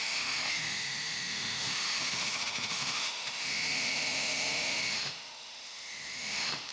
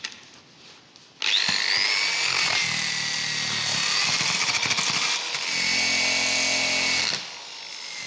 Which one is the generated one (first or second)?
first